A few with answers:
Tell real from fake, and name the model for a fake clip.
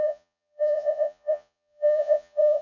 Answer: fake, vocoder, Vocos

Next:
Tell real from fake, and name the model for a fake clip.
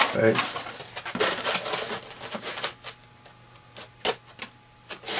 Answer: real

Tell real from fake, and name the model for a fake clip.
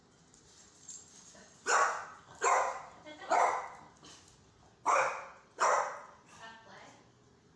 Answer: real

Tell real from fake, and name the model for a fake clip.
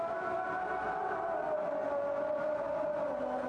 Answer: real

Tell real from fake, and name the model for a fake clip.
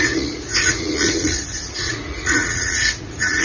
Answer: fake, vocoder, Vocos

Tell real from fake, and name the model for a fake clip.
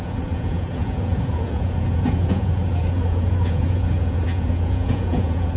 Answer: fake, vocoder, Vocos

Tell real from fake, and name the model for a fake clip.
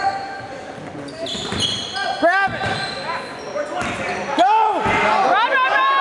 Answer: real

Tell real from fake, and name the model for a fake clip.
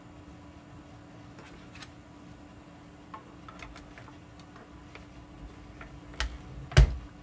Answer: real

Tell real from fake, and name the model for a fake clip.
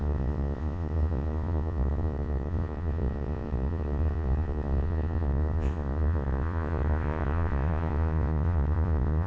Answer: fake, vocoder, Vocos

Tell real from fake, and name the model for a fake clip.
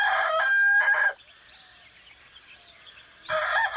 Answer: real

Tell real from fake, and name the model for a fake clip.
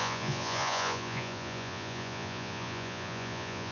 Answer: fake, vocoder, Vocos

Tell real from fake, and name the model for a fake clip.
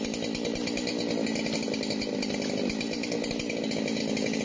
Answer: real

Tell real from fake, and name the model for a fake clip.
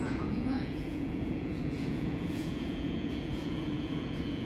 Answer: fake, vocoder, Vocos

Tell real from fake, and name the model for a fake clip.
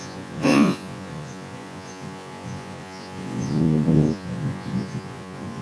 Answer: fake, vocoder, Vocos